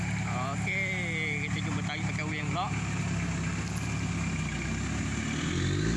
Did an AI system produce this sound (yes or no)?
no